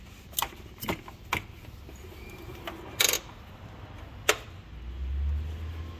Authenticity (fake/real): real